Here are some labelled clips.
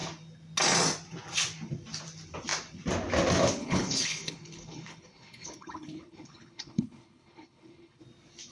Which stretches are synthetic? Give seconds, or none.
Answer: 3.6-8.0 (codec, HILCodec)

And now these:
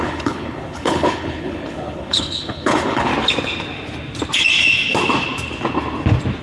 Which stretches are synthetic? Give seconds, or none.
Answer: 0.0-3.1 (codec, HILCodec)

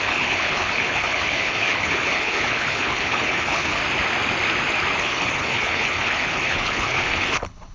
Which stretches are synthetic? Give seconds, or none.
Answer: 0.0-3.8 (codec, HILCodec); 5.0-7.7

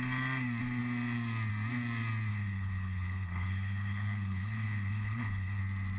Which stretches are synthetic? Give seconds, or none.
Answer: 2.3-5.6 (codec, HILCodec)

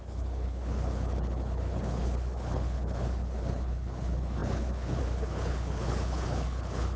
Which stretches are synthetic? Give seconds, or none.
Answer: 0.0-7.0 (codec, HILCodec)

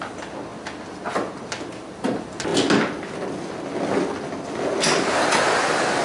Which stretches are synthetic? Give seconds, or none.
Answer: none